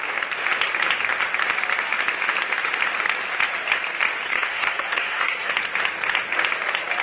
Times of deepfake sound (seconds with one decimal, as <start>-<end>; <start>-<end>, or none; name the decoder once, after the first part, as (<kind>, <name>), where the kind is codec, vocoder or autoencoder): 4.3-5.5 (codec, SNAC)